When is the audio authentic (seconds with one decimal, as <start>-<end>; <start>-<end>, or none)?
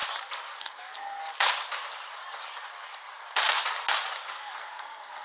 0.0-0.6; 1.2-4.3